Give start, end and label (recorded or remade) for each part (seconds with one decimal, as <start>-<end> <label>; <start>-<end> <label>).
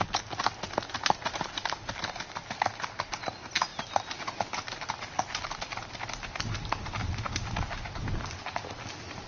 0.0-9.3 recorded